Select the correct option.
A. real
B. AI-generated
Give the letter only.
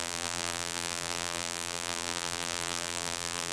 B